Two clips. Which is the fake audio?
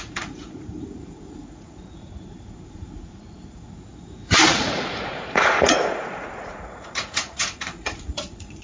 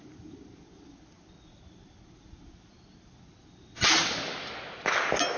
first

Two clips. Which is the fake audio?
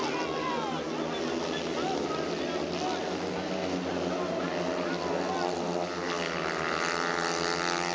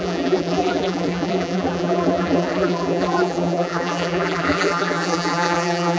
second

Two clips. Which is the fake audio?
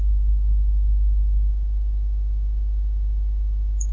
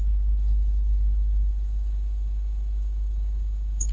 second